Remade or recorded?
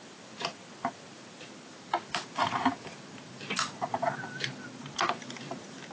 remade